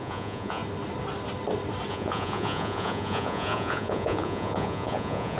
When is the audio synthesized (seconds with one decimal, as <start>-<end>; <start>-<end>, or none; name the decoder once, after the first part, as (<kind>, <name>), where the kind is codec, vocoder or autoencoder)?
0.0-0.6 (vocoder, Vocos); 1.9-5.4

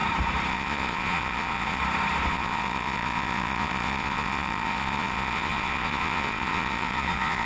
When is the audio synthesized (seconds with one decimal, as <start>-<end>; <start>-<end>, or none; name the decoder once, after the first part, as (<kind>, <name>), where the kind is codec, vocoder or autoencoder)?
0.5-1.8 (vocoder, Vocos); 2.3-7.5

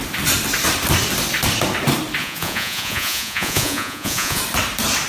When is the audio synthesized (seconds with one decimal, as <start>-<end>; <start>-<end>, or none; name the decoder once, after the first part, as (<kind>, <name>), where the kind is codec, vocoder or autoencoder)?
2.2-4.4 (vocoder, Vocos)

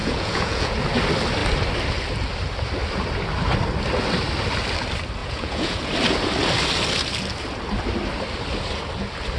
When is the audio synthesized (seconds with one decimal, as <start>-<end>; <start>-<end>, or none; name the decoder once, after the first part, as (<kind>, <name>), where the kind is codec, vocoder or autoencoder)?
0.0-0.8 (vocoder, Vocos); 5.2-5.9